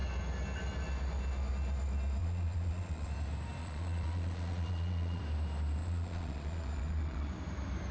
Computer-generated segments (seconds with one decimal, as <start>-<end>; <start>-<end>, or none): 2.2-3.1; 3.6-5.2; 5.8-7.3